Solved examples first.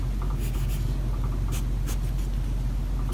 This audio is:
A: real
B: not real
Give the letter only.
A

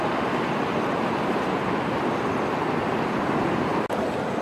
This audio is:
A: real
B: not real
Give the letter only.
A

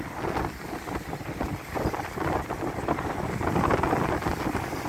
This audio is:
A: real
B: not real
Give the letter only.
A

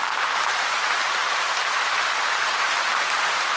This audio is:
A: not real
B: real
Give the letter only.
A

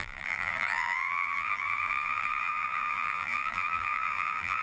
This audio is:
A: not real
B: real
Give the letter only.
A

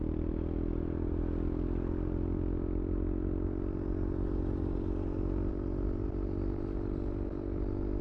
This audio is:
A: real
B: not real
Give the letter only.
A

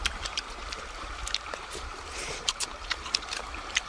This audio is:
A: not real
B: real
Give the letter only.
A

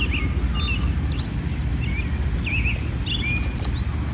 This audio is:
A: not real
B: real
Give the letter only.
B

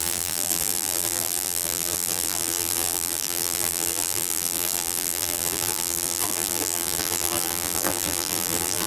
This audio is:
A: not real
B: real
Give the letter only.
A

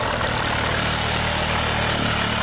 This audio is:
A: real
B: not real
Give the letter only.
A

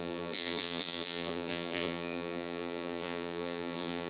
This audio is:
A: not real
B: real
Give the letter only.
A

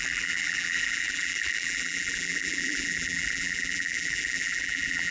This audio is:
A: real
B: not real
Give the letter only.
B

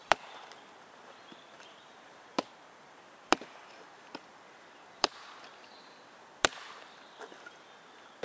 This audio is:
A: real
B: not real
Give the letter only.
B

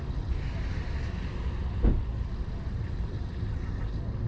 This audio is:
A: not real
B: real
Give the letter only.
B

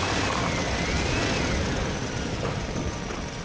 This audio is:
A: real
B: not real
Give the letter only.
A